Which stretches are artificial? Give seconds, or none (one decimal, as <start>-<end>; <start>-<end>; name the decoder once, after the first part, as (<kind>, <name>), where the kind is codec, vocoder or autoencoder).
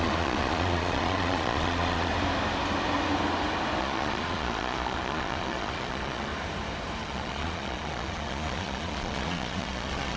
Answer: 0.0-2.1 (vocoder, Vocos); 3.8-6.3; 7.0-10.2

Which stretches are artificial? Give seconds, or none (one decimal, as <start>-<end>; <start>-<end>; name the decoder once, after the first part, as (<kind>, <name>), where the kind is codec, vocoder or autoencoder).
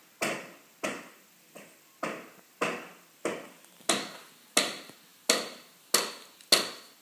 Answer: none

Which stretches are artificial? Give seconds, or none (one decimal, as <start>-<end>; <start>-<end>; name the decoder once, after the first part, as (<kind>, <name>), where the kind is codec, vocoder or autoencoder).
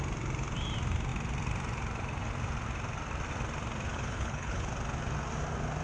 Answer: 3.9-4.7 (codec, HILCodec)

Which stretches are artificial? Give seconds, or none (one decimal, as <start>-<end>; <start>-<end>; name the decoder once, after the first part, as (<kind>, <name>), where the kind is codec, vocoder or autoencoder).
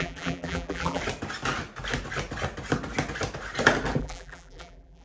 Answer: 0.0-1.0 (vocoder, BigVGAN v2); 4.0-5.0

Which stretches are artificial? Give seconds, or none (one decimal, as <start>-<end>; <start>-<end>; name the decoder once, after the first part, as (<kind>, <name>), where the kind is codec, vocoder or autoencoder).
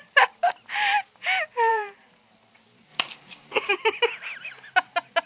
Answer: 1.7-2.3 (vocoder, BigVGAN v2); 2.9-3.7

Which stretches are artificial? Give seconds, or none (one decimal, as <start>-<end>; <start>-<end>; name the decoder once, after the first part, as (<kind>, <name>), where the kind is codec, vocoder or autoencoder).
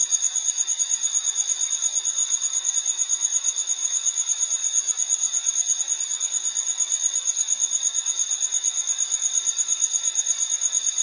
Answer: 0.0-0.8 (vocoder, Vocos); 3.8-5.8